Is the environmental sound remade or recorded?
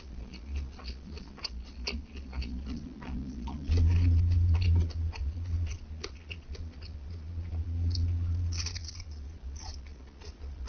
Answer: remade